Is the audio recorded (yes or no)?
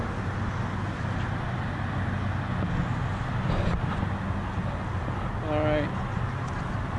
yes